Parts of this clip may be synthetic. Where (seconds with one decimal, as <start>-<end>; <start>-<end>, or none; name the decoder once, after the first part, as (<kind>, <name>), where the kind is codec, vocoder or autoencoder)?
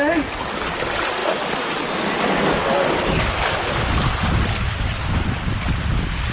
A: none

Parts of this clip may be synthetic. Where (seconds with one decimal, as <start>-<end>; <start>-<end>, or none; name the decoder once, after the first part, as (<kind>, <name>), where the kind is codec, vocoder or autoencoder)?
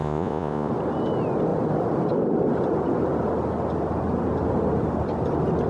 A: 0.0-0.7 (vocoder, Vocos)